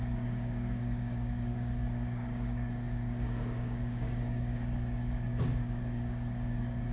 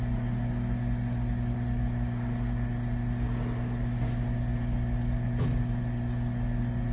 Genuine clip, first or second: second